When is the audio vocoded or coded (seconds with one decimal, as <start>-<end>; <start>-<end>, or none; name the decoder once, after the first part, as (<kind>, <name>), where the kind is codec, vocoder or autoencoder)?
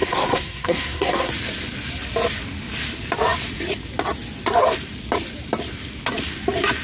0.0-1.3 (codec, SNAC)